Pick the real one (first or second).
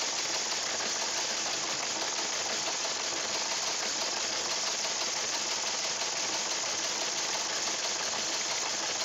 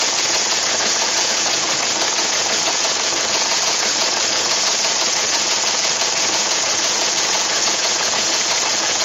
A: first